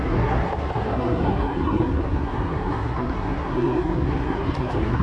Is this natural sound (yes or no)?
no